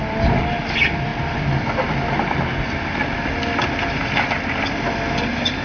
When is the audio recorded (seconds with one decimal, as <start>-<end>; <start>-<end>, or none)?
0.0-5.6